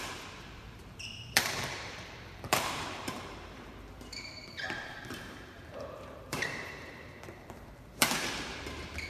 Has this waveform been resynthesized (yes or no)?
yes